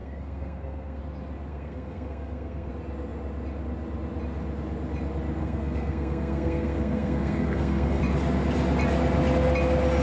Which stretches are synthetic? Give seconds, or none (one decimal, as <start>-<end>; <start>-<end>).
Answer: 0.0-1.0; 1.5-2.7; 5.4-8.0